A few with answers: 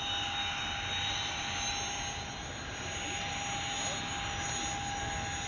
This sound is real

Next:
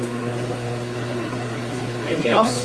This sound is fake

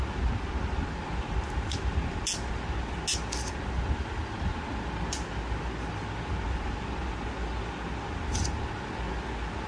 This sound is real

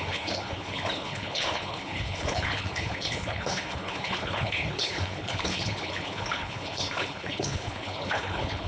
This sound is fake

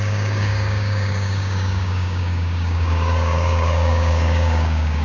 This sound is fake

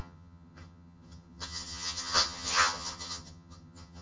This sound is fake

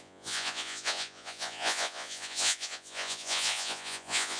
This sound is fake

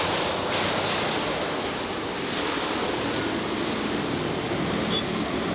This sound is real